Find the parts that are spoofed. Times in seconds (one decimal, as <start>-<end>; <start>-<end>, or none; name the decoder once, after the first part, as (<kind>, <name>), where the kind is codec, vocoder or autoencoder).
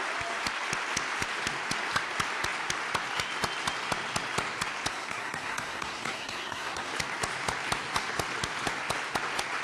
4.9-6.9 (codec, SNAC)